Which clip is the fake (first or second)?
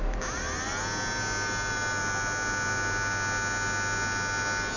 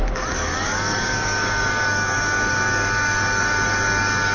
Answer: second